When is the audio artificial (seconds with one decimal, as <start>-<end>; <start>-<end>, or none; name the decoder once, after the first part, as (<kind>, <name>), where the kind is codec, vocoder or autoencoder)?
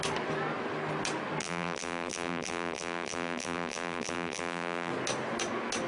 1.4-4.9 (vocoder, BigVGAN v2)